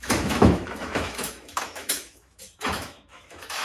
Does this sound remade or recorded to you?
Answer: remade